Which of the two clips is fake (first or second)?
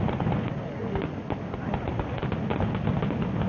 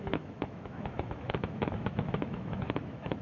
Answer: second